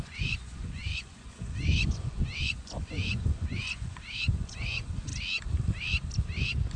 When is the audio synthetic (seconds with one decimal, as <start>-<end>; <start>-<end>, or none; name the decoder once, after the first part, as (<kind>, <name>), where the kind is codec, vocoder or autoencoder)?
0.0-5.1 (vocoder, Vocos)